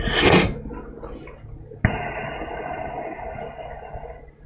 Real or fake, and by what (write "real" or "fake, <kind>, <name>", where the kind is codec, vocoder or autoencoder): real